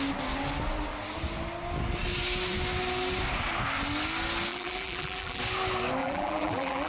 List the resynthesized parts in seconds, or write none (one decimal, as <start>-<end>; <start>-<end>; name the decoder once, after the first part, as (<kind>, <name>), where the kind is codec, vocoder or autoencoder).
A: 4.5-5.4 (vocoder, BigVGAN v2); 6.0-6.9